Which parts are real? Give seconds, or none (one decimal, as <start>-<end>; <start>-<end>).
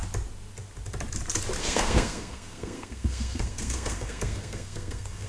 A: 0.0-1.6